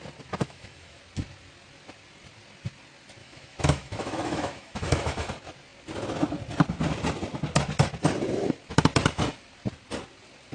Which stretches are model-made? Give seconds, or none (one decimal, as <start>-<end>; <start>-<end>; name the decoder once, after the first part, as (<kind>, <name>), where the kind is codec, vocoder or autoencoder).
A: 0.4-1.0 (autoencoder, DAC-VAE); 3.2-5.3